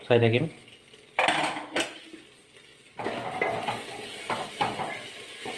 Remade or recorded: recorded